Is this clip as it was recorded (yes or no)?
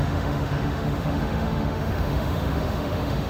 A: no